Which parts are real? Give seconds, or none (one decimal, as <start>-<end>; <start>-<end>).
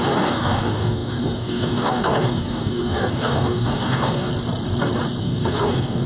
4.3-5.2